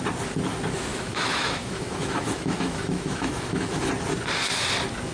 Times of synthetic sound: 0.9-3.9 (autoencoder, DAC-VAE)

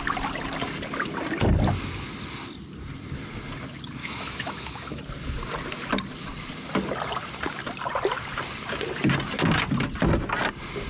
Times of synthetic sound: 4.0-5.0 (autoencoder, DAC-VAE)

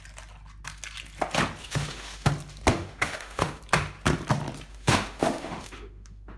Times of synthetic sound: 1.6-2.3 (autoencoder, DAC-VAE); 2.7-3.6; 4.7-6.4

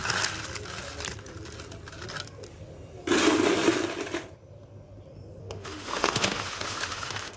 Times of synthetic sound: 5.4-7.4 (autoencoder, DAC-VAE)

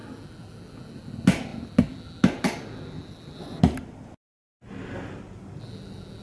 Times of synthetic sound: none

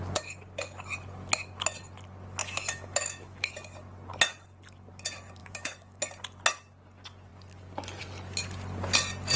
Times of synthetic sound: 2.4-3.5 (autoencoder, DAC-VAE); 5.4-6.0

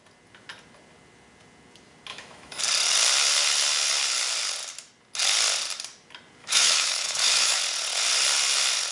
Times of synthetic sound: 2.1-2.6 (autoencoder, DAC-VAE); 6.4-7.6

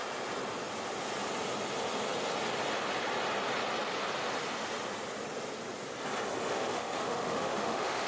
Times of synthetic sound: 6.5-8.1 (autoencoder, DAC-VAE)